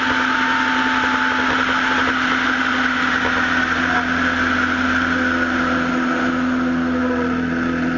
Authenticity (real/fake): real